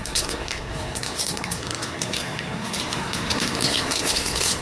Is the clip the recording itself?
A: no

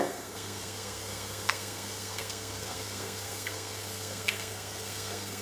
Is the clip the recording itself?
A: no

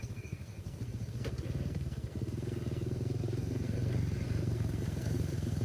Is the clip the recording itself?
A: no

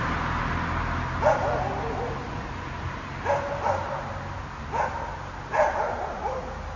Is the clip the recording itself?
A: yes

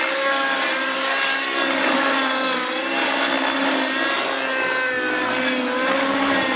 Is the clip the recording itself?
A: yes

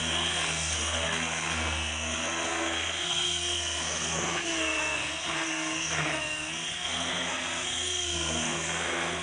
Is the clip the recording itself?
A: no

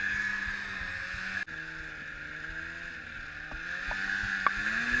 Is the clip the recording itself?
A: yes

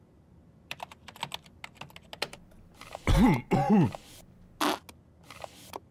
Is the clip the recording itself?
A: yes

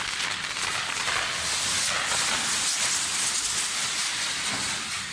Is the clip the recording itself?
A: yes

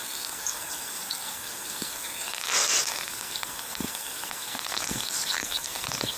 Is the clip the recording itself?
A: no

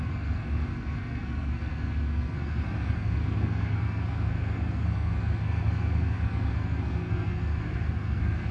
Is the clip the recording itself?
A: no